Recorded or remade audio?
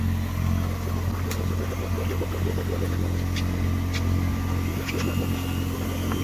recorded